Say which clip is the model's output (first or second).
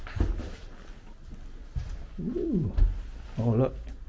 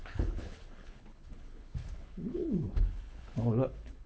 second